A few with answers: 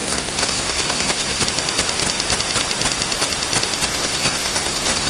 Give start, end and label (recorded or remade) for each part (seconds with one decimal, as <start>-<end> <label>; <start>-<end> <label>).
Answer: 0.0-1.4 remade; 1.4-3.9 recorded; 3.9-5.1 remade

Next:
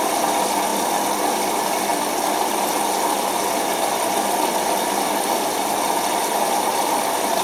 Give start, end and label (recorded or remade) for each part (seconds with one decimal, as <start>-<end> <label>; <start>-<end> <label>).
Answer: 0.0-7.4 recorded

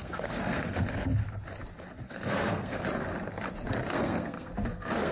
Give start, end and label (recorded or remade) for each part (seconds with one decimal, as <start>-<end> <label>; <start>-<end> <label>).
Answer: 0.0-1.2 remade; 1.2-2.1 recorded; 2.1-2.8 remade; 2.8-3.9 recorded; 3.9-5.1 remade